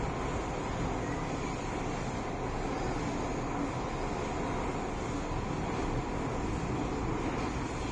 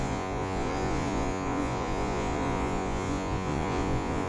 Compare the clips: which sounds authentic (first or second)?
first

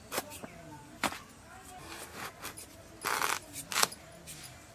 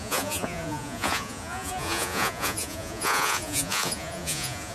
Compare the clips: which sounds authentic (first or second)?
first